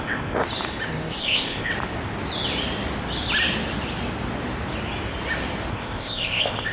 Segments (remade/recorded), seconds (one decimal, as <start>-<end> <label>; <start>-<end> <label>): 0.0-0.4 remade; 0.4-1.2 recorded; 1.2-1.7 remade; 1.7-5.7 recorded; 5.7-6.7 remade